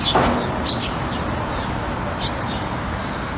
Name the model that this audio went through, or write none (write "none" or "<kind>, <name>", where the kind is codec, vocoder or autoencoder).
none